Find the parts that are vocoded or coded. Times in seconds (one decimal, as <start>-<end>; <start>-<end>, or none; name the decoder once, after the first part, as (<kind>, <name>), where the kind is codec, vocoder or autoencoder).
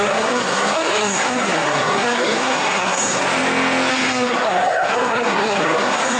0.0-3.2 (codec, SNAC); 3.9-6.2